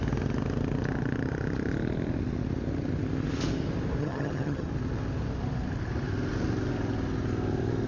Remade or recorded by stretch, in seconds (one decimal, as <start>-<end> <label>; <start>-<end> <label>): 0.0-4.0 recorded; 4.0-4.7 remade; 4.7-7.9 recorded